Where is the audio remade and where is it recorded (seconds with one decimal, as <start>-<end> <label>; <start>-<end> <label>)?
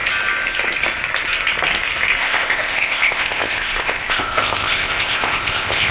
0.0-2.2 recorded; 2.2-5.9 remade